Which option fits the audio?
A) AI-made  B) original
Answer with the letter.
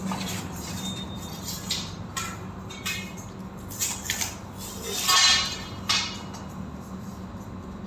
B